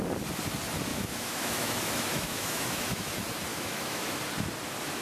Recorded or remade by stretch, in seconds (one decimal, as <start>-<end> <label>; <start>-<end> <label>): 0.0-0.9 recorded; 0.9-3.1 remade; 3.1-3.5 recorded; 3.5-4.2 remade; 4.2-5.0 recorded